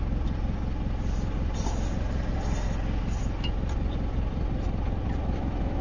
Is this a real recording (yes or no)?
yes